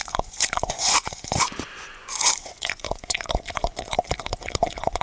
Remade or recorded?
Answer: remade